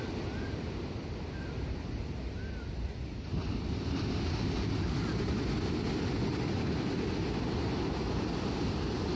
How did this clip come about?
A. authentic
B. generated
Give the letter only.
A